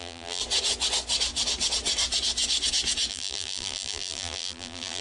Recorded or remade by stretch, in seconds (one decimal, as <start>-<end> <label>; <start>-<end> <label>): 0.0-0.4 remade; 0.4-3.1 recorded; 3.1-5.0 remade